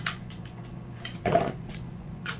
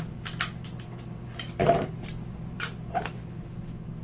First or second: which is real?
second